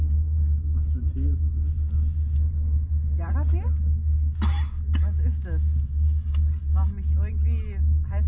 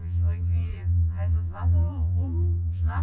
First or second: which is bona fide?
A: first